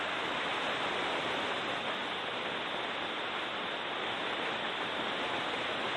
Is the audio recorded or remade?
recorded